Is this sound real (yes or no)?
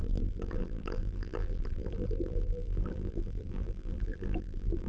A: no